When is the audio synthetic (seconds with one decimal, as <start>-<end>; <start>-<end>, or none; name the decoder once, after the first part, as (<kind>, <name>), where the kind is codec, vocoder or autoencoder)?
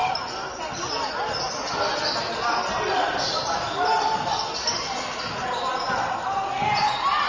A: none